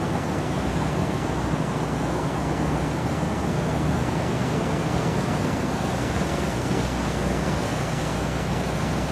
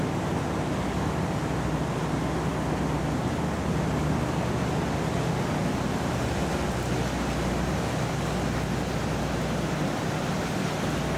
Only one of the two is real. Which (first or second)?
second